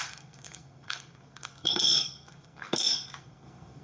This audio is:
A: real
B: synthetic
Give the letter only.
B